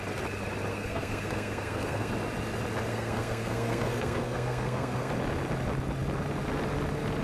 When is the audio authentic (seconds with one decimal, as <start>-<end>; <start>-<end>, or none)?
0.0-0.7; 2.1-2.9; 5.1-7.2